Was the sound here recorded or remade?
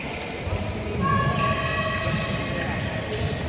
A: recorded